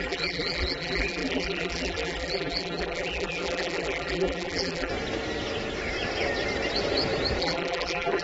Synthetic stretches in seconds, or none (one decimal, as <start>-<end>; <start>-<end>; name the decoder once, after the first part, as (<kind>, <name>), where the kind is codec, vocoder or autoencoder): 0.0-4.9 (vocoder, BigVGAN v2); 7.4-8.2